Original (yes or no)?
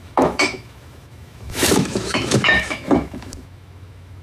no